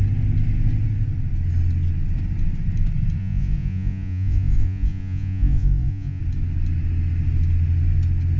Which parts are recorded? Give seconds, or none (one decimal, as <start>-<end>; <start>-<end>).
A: 0.0-3.2; 6.2-8.4